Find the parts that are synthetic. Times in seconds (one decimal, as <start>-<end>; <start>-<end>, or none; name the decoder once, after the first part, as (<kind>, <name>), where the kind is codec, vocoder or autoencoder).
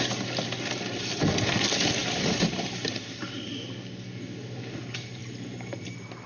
2.0-3.5 (vocoder, BigVGAN v2); 5.2-6.3